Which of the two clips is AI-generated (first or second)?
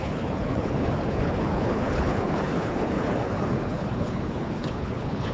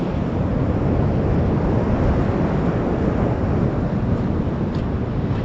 first